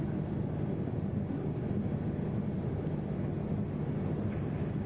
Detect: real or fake real